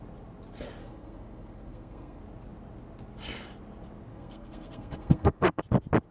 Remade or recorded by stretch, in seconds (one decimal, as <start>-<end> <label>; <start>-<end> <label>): 0.0-0.8 recorded; 0.8-2.2 remade; 2.2-4.1 recorded; 4.1-5.6 remade; 5.6-6.1 recorded

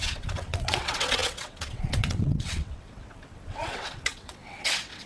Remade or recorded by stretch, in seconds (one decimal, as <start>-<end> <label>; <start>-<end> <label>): 0.0-5.1 remade

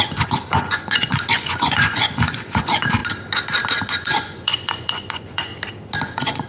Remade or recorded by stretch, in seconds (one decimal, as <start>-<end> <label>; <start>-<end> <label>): 0.0-3.0 remade; 3.0-3.9 recorded; 3.9-5.5 remade; 5.5-6.0 recorded; 6.0-6.5 remade

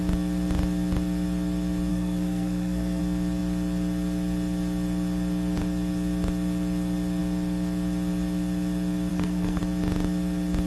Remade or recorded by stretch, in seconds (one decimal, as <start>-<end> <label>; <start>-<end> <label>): 0.0-1.9 recorded; 1.9-3.0 remade; 3.0-9.1 recorded; 9.1-9.6 remade; 9.6-10.7 recorded

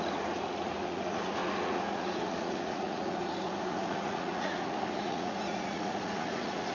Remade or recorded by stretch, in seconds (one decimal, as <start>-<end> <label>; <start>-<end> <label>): 0.0-6.7 remade